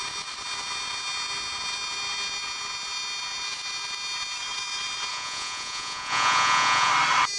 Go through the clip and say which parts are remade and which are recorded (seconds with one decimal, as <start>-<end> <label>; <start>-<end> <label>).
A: 0.0-5.1 recorded; 5.1-6.9 remade; 6.9-7.4 recorded